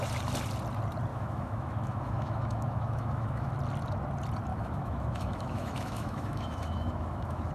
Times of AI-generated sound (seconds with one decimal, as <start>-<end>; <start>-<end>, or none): 1.1-3.5; 4.5-7.5